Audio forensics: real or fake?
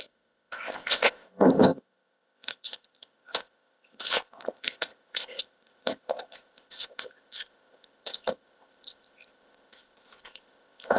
fake